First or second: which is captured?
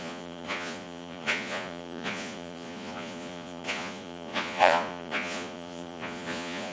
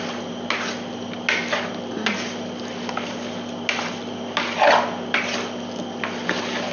second